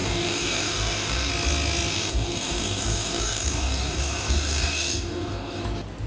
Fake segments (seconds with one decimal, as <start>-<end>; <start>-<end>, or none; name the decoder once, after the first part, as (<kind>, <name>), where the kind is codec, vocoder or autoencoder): 0.0-1.3 (codec, DAC); 1.9-5.6